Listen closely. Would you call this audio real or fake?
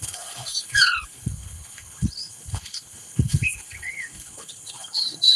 fake